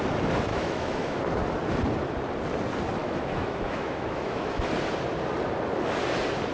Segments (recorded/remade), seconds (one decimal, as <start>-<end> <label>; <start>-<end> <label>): 0.0-0.5 recorded; 0.5-1.2 remade; 1.2-3.0 recorded; 3.0-4.7 remade; 4.7-6.5 recorded